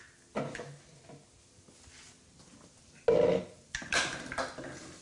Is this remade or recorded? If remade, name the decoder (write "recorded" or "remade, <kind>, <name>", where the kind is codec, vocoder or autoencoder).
recorded